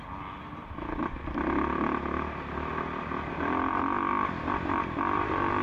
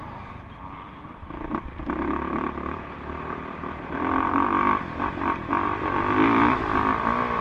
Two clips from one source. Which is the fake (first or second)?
second